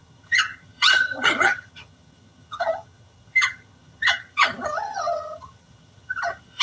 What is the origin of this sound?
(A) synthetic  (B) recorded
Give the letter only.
A